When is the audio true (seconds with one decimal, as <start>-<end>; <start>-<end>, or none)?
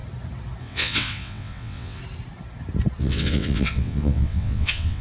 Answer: 0.0-0.6; 2.0-3.0